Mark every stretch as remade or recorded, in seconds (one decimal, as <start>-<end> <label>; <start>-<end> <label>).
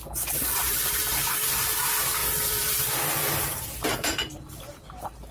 0.0-0.6 recorded; 0.6-1.8 remade; 1.8-2.2 recorded; 2.2-4.8 remade; 4.8-5.3 recorded